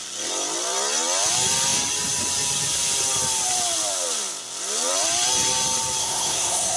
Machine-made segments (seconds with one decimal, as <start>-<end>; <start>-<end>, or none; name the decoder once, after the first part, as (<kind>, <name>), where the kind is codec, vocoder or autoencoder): 6.0-6.8 (codec, SNAC)